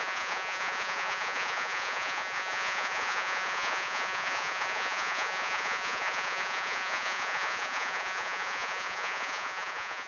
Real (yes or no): no